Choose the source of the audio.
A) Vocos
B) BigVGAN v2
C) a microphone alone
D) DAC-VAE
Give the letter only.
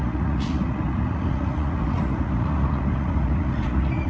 A